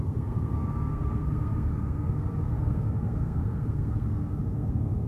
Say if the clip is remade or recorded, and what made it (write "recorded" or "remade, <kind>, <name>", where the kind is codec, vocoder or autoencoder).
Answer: remade, codec, SNAC